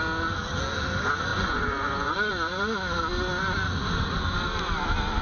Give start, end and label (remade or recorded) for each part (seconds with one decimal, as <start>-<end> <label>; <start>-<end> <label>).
0.0-1.3 recorded; 1.3-2.3 remade; 2.3-5.2 recorded